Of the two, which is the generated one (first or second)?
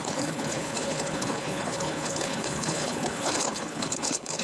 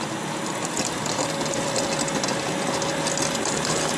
first